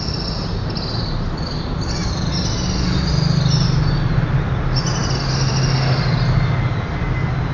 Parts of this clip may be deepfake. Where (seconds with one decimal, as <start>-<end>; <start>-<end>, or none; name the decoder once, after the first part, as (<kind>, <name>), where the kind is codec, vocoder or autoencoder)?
none